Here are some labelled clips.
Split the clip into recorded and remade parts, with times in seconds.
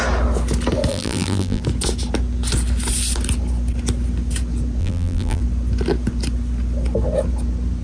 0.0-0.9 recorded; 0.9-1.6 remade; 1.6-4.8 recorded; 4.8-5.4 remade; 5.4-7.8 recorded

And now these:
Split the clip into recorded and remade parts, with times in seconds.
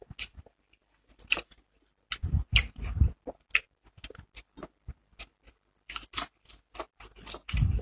0.0-7.8 recorded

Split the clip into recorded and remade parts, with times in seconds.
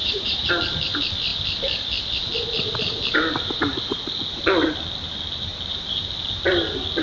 0.0-0.5 remade; 0.5-7.0 recorded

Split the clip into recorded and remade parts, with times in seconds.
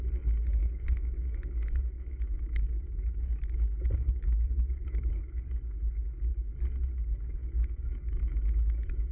0.0-0.6 recorded; 0.6-5.4 remade; 5.4-7.4 recorded; 7.4-9.1 remade